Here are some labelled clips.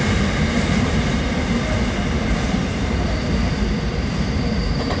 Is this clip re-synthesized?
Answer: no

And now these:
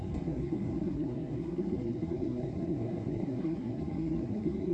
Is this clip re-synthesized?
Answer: yes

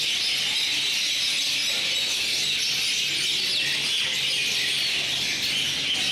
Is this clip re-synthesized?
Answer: no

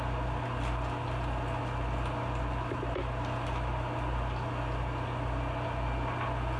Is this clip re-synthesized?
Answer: no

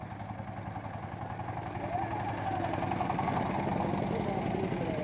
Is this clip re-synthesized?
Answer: no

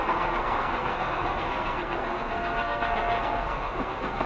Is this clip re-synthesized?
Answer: yes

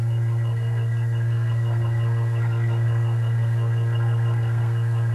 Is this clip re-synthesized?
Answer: yes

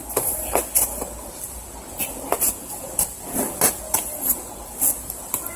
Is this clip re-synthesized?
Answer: no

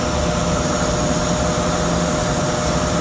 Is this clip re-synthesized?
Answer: no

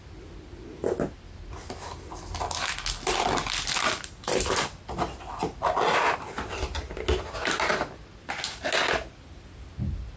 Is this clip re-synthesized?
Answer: no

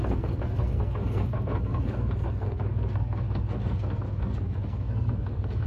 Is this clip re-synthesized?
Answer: yes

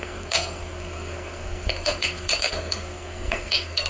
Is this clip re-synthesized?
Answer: yes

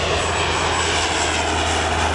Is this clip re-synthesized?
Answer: no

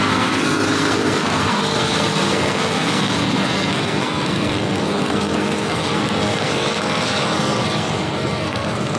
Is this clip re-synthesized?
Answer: yes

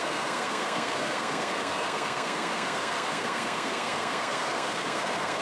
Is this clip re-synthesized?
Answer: yes